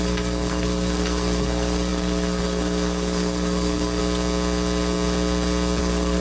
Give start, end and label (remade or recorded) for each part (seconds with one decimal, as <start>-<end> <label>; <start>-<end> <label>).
0.0-4.0 remade; 4.0-5.8 recorded; 5.8-6.2 remade

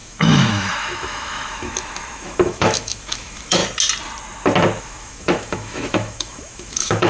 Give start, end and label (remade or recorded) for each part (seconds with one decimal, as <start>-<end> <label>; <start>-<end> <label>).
0.0-3.6 remade; 3.6-4.8 recorded; 4.8-7.1 remade

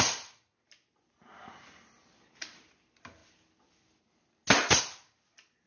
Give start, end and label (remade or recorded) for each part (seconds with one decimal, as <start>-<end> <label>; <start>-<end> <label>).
0.0-5.7 recorded

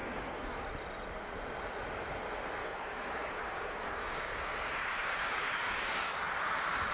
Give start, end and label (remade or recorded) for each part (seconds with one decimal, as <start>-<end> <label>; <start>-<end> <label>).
0.0-0.7 remade; 0.7-2.6 recorded; 2.6-6.1 remade; 6.1-6.9 recorded

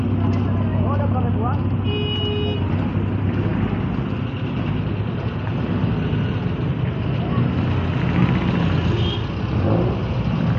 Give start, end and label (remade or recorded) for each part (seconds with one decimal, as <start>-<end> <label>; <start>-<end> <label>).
0.0-10.6 recorded

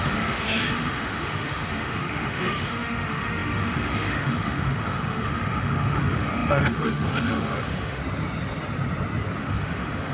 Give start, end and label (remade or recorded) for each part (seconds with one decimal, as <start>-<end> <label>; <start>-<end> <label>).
0.0-8.0 remade; 8.0-9.4 recorded; 9.4-10.1 remade

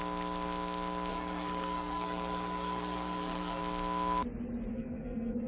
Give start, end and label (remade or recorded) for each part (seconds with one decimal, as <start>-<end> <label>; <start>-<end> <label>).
0.0-1.1 recorded; 1.1-3.6 remade; 3.6-4.7 recorded; 4.7-5.5 remade